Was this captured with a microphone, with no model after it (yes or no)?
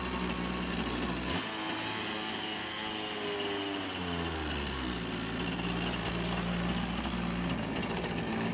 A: yes